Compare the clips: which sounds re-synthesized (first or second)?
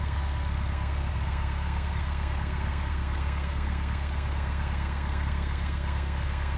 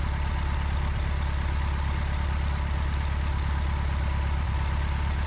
first